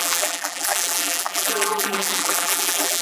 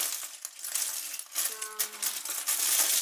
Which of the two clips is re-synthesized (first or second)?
first